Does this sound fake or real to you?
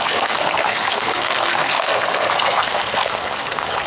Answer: fake